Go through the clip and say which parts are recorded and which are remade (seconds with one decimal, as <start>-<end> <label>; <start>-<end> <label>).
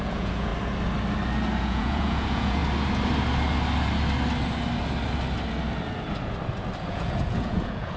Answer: 0.0-0.5 remade; 0.5-1.6 recorded; 1.6-2.6 remade; 2.6-6.9 recorded; 6.9-8.0 remade